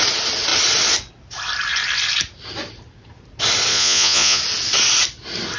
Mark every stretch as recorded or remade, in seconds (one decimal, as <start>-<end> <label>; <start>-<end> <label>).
0.0-3.7 recorded; 3.7-4.4 remade; 4.4-5.6 recorded